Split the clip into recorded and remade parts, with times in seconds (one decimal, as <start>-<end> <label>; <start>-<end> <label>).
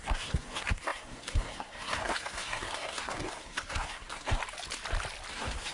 0.0-4.4 remade; 4.4-5.3 recorded; 5.3-5.7 remade